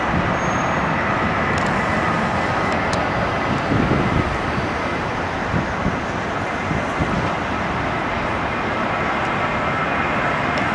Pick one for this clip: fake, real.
real